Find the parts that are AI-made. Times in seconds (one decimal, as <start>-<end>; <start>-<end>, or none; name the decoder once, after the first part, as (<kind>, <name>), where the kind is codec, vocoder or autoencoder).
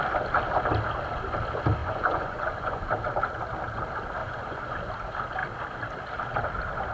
1.8-2.9 (vocoder, Vocos); 4.2-4.8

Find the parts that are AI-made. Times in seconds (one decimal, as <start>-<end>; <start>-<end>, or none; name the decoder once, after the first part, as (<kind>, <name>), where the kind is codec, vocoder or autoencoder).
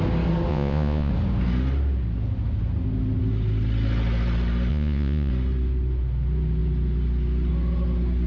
0.5-1.1 (vocoder, Vocos); 4.7-5.3